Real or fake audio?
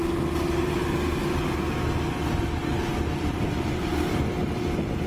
real